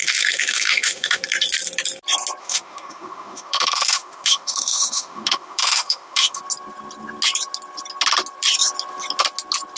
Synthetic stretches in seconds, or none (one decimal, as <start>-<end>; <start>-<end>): 0.0-1.2; 2.4-6.4